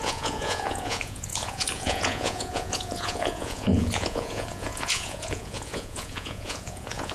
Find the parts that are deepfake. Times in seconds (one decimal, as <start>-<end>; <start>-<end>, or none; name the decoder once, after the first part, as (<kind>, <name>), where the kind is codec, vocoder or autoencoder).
0.0-7.1 (vocoder, Vocos)